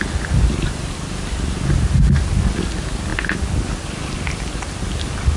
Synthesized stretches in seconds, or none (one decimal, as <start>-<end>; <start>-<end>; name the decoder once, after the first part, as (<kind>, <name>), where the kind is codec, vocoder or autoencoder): none

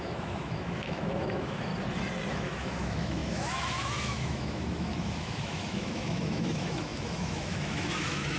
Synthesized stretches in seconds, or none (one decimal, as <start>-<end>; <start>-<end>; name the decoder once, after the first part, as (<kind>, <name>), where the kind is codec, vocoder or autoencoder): 0.0-1.7 (autoencoder, DAC-VAE); 2.3-8.4

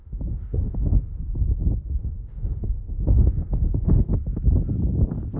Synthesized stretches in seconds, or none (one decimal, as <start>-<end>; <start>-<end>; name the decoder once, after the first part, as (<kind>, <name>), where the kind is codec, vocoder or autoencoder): 0.0-1.2 (autoencoder, DAC-VAE); 2.0-4.3

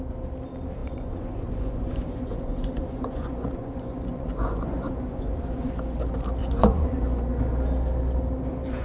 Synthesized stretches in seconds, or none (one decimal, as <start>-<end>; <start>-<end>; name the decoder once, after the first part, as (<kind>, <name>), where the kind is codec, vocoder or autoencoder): 0.8-5.7 (vocoder, Vocos); 6.4-7.0

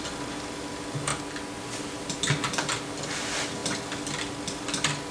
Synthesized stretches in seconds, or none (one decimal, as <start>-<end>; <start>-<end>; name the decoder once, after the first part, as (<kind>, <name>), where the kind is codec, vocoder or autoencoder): none